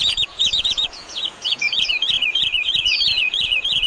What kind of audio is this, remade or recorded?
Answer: remade